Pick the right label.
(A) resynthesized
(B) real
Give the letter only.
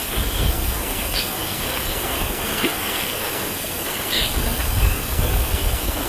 A